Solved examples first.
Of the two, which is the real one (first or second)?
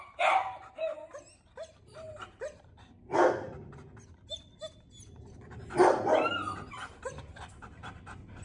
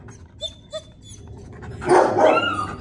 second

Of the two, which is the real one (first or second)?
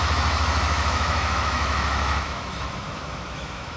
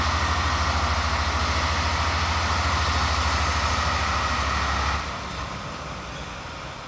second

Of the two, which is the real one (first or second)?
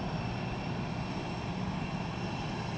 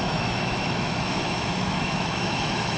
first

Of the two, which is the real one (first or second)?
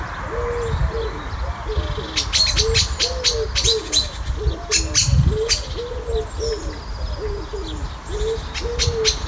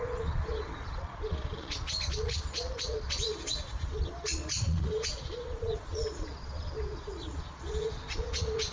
first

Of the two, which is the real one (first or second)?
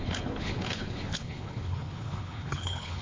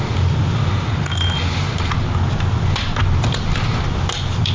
second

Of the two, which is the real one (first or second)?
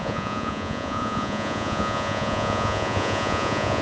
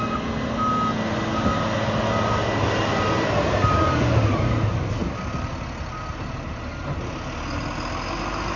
second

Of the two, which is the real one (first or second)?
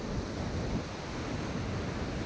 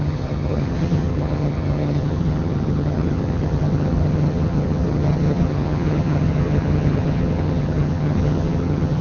first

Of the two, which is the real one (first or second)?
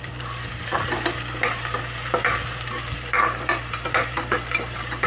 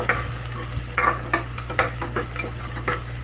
second